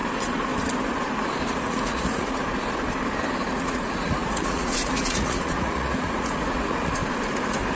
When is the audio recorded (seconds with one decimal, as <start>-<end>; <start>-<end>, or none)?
0.0-1.5; 2.4-3.5; 7.0-7.8